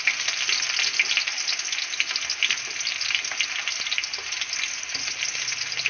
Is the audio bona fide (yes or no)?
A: yes